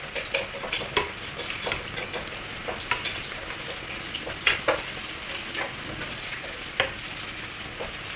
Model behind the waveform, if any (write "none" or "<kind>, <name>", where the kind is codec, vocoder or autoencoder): none